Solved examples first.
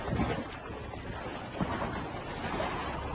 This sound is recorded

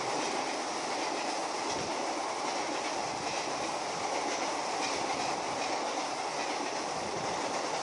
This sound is recorded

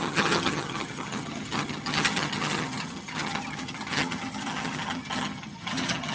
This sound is remade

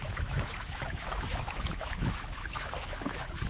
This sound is remade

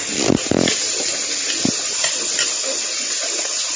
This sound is recorded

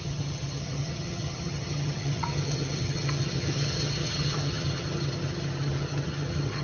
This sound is remade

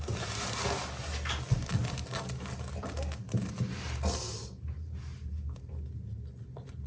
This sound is recorded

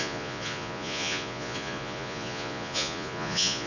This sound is remade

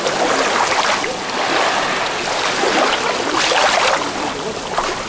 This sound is recorded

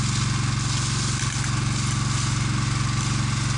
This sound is recorded